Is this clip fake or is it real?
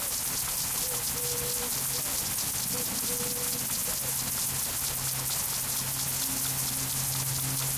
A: real